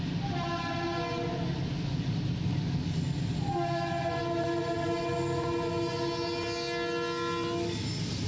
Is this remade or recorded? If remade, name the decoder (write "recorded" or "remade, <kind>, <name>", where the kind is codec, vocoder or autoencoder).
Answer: recorded